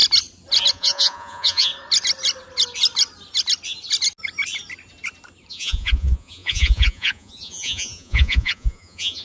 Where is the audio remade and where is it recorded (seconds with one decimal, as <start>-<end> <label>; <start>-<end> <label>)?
0.0-0.7 recorded; 0.7-1.7 remade; 1.7-5.5 recorded; 5.5-9.2 remade